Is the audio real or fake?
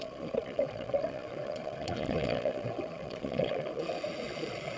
fake